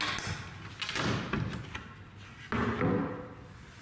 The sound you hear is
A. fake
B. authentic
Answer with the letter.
B